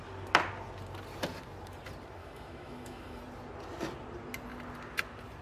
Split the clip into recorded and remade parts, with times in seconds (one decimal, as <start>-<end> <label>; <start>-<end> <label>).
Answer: 0.0-2.2 recorded; 2.2-3.2 remade; 3.2-5.4 recorded